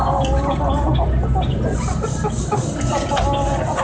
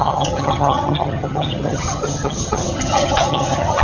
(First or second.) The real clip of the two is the first